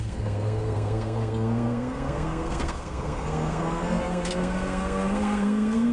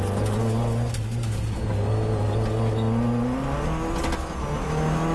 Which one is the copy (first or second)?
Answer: first